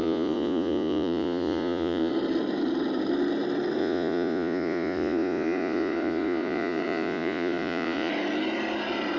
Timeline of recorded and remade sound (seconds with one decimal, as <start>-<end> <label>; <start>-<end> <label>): 0.0-2.1 remade; 2.1-3.8 recorded; 3.8-8.1 remade; 8.1-9.2 recorded

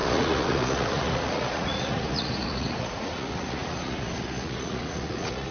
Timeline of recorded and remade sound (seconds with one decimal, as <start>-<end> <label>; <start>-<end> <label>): 0.0-5.5 remade

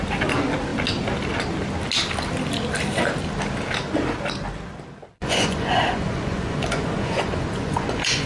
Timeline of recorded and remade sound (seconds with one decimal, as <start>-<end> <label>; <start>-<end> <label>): 0.0-5.2 recorded; 5.2-8.3 remade

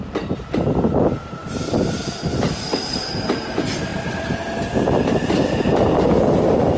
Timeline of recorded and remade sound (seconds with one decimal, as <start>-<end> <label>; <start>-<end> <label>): 0.0-6.8 remade

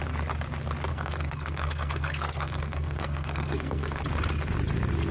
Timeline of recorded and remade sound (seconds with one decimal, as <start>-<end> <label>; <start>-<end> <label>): 0.0-0.9 recorded; 0.9-4.0 remade; 4.0-5.1 recorded

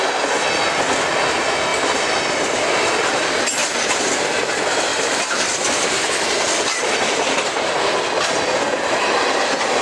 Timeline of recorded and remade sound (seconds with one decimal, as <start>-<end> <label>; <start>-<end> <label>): 0.0-1.7 recorded; 1.7-2.7 remade; 2.7-3.6 recorded; 3.6-4.2 remade; 4.2-4.9 recorded; 4.9-5.5 remade; 5.5-9.8 recorded

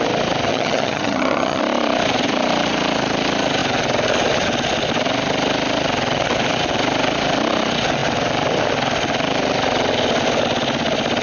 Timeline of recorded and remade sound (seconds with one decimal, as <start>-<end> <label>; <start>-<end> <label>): 0.0-0.5 recorded; 0.5-1.6 remade; 1.6-11.2 recorded